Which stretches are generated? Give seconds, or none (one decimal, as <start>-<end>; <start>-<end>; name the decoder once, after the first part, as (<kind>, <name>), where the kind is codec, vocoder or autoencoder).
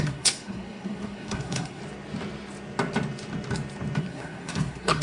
0.0-1.8 (codec, SNAC); 4.0-5.0